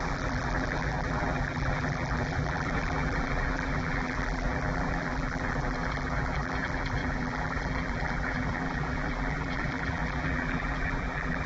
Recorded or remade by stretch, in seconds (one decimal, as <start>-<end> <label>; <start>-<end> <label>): 0.0-11.5 remade